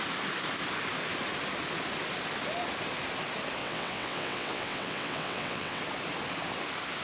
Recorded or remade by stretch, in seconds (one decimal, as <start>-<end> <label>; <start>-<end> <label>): 0.0-3.6 recorded; 3.6-5.8 remade; 5.8-7.0 recorded